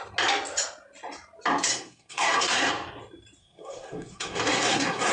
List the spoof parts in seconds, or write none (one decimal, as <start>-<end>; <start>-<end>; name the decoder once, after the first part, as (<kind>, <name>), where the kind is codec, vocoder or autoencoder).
1.7-2.7 (codec, SNAC); 3.4-5.1